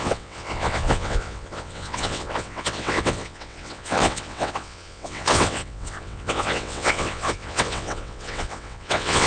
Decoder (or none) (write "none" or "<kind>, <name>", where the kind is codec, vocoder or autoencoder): vocoder, WaveNeXt